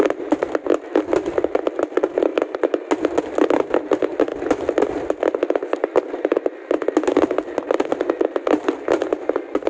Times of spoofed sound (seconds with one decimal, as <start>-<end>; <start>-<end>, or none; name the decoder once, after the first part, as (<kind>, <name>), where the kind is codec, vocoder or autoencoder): none